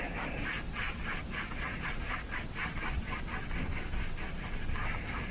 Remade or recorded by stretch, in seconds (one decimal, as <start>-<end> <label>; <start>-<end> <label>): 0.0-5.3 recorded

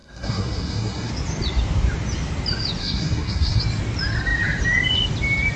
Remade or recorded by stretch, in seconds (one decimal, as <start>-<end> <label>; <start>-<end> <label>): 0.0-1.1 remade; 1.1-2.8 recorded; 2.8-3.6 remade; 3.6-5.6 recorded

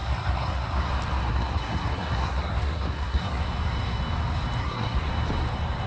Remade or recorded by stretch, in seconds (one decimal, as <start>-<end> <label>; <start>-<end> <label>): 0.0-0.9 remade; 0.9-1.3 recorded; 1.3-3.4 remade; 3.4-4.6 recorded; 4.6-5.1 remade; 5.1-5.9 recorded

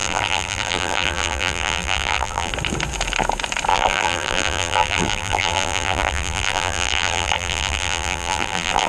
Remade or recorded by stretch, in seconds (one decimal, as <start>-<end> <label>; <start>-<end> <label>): 0.0-2.5 remade; 2.5-3.7 recorded; 3.7-8.9 remade